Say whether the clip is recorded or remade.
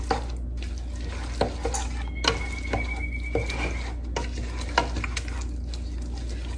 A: recorded